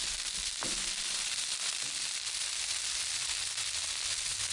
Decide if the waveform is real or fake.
real